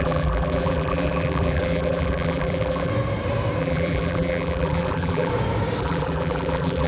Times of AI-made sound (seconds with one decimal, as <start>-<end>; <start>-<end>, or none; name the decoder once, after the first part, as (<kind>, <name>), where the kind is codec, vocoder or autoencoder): 0.0-2.9 (vocoder, BigVGAN v2); 3.6-5.3; 5.8-6.9

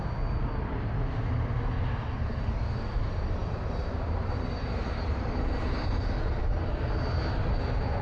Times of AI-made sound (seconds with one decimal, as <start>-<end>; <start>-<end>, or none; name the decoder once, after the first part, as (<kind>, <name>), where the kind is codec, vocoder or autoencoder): none

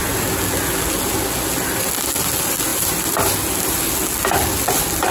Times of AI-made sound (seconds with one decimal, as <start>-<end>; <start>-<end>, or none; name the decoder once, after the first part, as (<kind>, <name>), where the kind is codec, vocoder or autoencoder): none

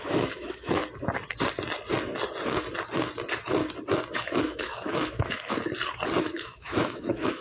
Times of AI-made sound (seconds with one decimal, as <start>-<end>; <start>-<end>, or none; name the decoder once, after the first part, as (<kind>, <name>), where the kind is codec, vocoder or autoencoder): 0.0-0.8 (autoencoder, DAC-VAE); 4.1-5.5; 6.2-7.4

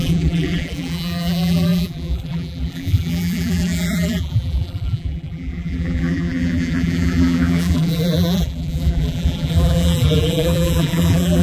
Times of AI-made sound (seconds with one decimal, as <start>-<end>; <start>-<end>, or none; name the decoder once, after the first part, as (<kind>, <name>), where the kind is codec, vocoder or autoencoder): 0.0-11.4 (vocoder, BigVGAN v2)

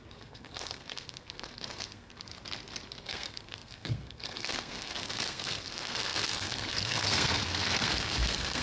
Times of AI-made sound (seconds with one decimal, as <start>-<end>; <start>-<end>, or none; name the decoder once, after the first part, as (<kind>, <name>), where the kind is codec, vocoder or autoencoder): 0.0-2.3 (codec, SNAC); 3.0-8.6

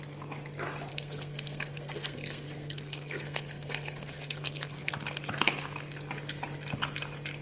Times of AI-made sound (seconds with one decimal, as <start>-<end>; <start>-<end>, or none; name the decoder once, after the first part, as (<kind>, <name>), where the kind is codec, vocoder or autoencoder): 0.9-4.9 (codec, SNAC)

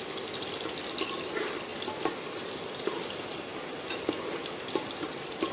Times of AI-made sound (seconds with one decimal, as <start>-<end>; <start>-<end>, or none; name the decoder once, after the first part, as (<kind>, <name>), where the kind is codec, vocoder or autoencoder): none